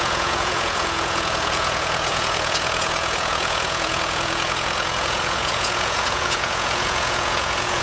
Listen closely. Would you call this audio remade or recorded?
remade